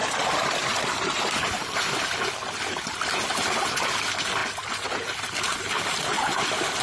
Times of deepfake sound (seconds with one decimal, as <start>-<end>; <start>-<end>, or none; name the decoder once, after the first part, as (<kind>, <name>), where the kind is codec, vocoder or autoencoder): 0.7-2.6 (vocoder, BigVGAN v2); 4.4-5.6